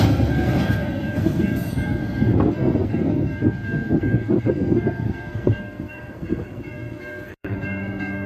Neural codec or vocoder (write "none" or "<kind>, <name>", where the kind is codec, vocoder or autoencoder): codec, SNAC